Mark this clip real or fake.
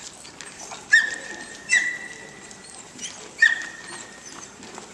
real